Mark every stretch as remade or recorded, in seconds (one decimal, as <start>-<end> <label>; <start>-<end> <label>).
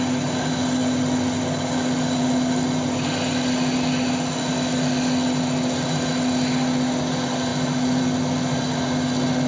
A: 0.0-9.5 recorded